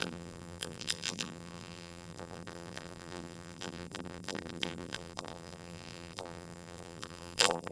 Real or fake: fake